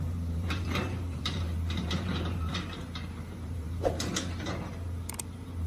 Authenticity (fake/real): fake